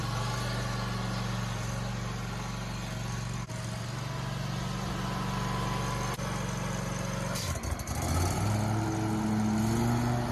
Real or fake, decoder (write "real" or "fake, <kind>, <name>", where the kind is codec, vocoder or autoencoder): real